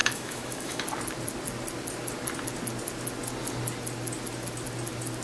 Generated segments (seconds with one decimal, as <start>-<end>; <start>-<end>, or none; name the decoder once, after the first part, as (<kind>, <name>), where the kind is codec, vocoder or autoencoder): 0.0-0.8 (autoencoder, DAC-VAE)